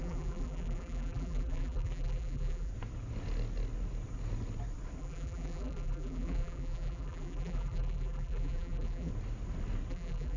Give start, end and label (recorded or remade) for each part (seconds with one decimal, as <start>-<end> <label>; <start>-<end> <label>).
0.0-2.7 remade; 2.7-5.0 recorded; 5.0-9.1 remade; 9.1-9.9 recorded; 9.9-10.4 remade